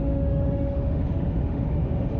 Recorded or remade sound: remade